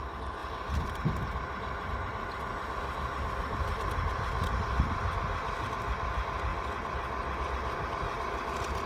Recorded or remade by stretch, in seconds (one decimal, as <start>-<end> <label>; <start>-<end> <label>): 0.0-8.9 recorded